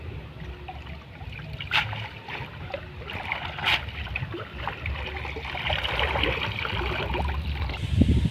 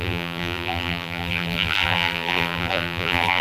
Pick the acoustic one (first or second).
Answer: first